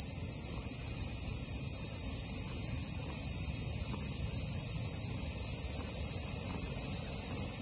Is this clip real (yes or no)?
yes